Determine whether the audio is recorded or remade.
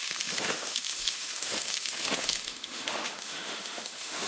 remade